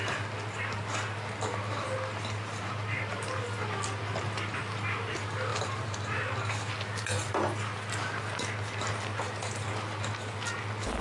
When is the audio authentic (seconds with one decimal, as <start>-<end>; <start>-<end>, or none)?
0.0-11.0